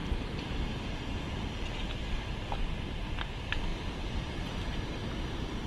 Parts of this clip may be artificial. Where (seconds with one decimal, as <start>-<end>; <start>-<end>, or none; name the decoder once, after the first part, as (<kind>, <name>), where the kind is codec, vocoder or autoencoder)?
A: none